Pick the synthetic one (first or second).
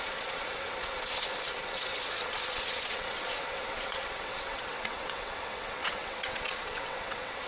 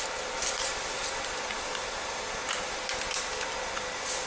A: first